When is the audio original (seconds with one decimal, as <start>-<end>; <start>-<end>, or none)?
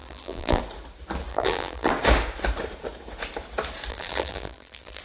0.6-1.3; 1.9-3.9